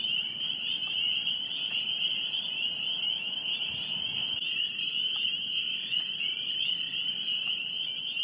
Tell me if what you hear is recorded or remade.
remade